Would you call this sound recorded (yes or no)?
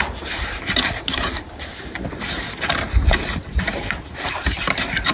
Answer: no